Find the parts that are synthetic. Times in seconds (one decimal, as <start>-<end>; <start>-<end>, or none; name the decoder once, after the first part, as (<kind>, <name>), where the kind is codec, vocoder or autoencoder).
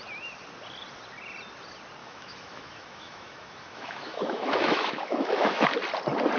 2.0-5.7 (autoencoder, DAC-VAE)